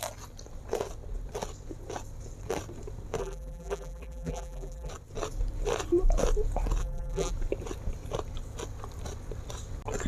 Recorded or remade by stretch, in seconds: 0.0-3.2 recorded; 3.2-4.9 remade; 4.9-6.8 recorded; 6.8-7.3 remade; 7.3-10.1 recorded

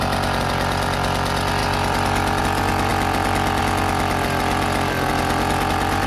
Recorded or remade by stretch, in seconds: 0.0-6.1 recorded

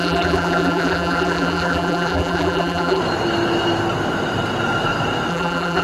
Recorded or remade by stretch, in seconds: 0.0-3.0 remade; 3.0-5.3 recorded; 5.3-5.8 remade

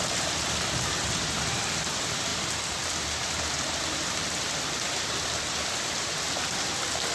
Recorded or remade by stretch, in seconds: 0.0-7.1 recorded

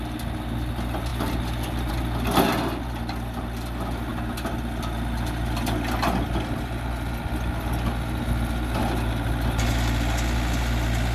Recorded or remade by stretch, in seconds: 0.0-11.1 recorded